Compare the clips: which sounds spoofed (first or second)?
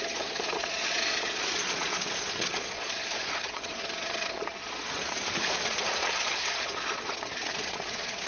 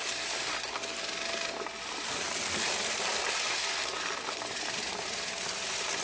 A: first